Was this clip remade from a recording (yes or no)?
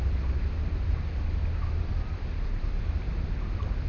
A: no